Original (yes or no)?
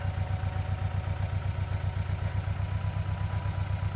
yes